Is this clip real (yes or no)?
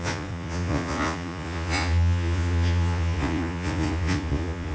no